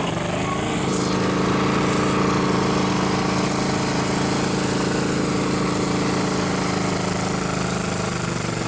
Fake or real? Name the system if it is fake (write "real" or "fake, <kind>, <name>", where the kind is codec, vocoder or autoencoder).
real